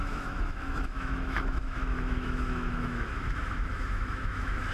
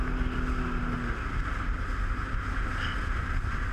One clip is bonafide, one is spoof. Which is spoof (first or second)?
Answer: first